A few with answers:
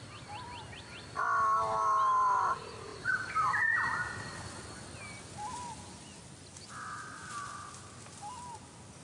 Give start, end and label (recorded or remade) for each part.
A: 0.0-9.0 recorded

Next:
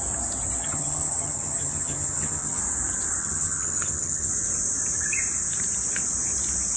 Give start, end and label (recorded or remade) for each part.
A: 0.0-0.6 recorded; 0.6-2.6 remade; 2.6-3.2 recorded; 3.2-4.3 remade; 4.3-6.8 recorded

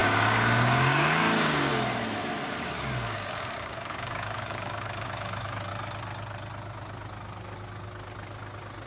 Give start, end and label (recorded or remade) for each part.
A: 0.0-1.7 remade; 1.7-2.6 recorded; 2.6-5.7 remade; 5.7-8.9 recorded

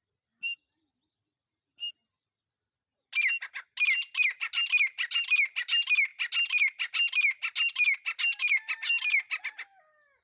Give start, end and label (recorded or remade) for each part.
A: 0.0-10.2 recorded

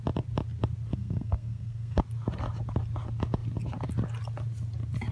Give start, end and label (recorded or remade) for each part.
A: 0.0-0.9 recorded; 0.9-2.0 remade; 2.0-5.1 recorded

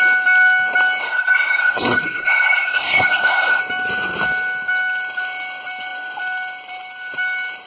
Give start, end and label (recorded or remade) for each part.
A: 0.0-1.0 recorded; 1.0-3.6 remade; 3.6-7.7 recorded

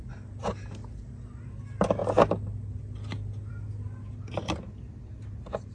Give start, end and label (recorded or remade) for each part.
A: 0.0-5.7 recorded

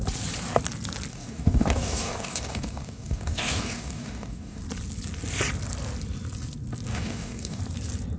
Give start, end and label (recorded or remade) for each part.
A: 0.0-1.1 recorded; 1.1-4.6 remade; 4.6-6.9 recorded; 6.9-7.6 remade; 7.6-8.2 recorded